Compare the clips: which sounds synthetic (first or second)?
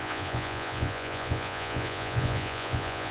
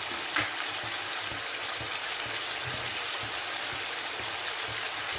first